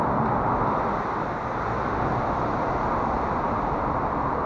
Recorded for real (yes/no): yes